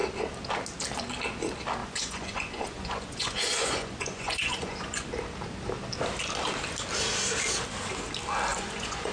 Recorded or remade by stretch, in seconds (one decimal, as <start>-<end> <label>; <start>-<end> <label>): 0.0-1.8 recorded; 1.8-5.1 remade; 5.1-8.5 recorded; 8.5-9.1 remade